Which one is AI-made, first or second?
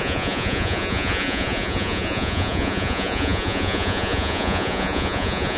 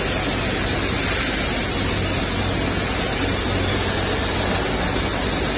first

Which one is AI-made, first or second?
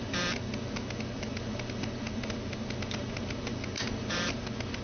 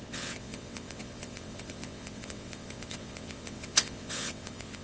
second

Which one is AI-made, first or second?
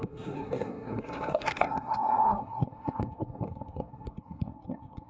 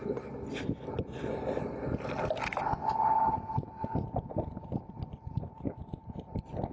first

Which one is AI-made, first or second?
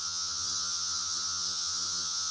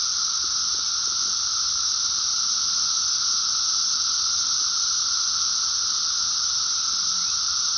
first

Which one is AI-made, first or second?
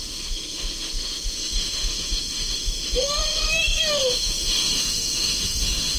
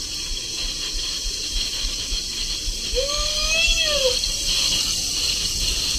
first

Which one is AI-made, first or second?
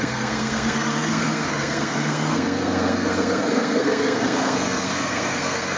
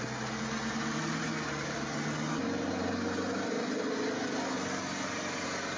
first